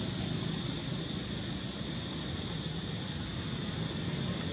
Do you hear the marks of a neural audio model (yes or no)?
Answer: no